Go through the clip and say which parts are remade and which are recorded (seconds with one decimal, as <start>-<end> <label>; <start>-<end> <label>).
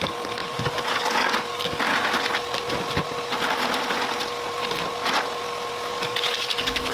0.0-1.9 remade; 1.9-5.9 recorded; 5.9-6.9 remade